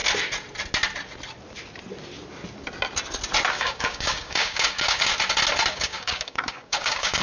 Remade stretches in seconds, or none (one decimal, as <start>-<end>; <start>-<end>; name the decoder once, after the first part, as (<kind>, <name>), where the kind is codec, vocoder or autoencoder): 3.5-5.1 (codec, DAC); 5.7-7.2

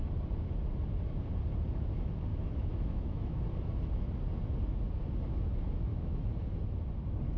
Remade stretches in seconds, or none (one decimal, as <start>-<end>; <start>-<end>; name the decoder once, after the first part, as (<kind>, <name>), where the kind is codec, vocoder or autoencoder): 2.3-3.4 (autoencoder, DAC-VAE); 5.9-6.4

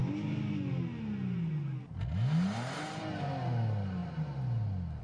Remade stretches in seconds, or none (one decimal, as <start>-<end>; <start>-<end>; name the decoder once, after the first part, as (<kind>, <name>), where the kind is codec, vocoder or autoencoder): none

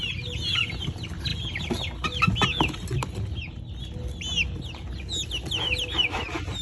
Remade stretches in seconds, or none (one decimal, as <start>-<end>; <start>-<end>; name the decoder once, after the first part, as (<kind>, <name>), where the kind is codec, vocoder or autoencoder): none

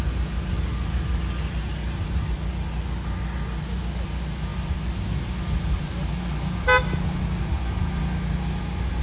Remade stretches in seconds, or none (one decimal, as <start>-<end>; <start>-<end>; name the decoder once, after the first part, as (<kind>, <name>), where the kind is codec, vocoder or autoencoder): none

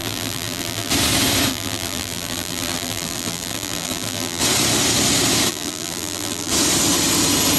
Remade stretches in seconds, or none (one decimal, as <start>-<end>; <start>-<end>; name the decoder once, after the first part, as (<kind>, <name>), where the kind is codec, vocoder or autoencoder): 0.0-0.9 (vocoder, BigVGAN v2); 1.5-4.4; 5.5-6.5

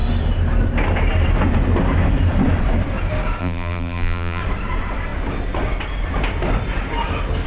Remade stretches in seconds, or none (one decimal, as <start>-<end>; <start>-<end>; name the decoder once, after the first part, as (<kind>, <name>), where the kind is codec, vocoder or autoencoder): 3.4-4.4 (vocoder, BigVGAN v2)